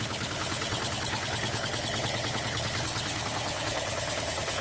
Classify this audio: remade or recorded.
remade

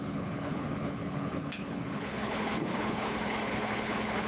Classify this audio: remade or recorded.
remade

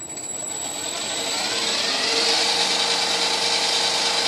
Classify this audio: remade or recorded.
recorded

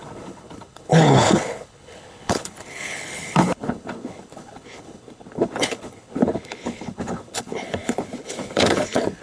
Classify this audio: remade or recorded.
remade